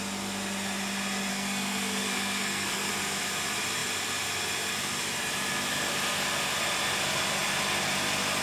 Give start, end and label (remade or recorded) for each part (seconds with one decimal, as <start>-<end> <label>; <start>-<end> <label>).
0.0-1.3 recorded; 1.3-2.9 remade; 2.9-8.4 recorded